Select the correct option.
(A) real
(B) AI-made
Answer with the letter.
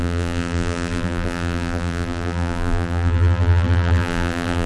B